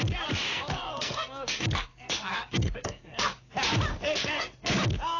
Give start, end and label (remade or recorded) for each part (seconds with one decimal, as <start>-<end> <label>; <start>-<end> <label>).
0.0-0.5 recorded; 0.5-3.5 remade; 3.5-3.9 recorded; 3.9-4.7 remade; 4.7-5.2 recorded